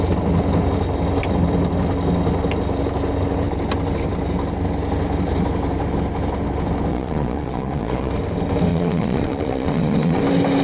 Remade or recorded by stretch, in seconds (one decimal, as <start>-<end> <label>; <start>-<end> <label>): 0.0-6.9 recorded; 6.9-8.1 remade; 8.1-8.7 recorded; 8.7-10.2 remade; 10.2-10.6 recorded